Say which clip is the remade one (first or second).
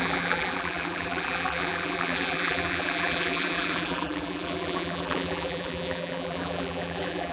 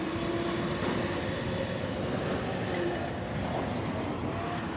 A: first